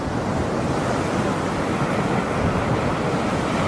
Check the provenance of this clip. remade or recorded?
recorded